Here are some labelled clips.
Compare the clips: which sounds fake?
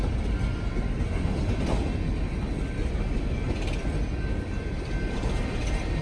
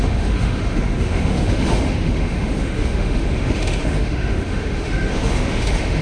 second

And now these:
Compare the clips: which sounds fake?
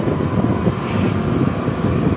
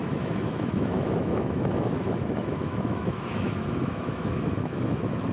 second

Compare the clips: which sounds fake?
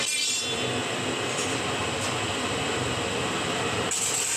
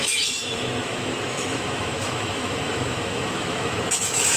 second